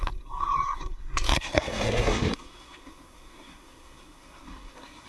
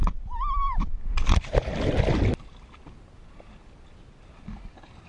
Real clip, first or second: second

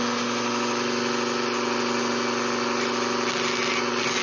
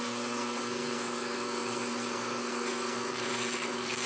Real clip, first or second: first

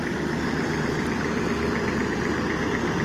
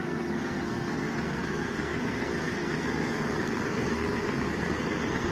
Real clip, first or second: first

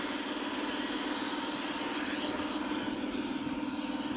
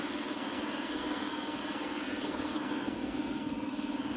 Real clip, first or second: first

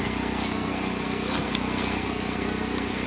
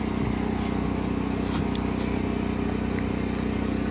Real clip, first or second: second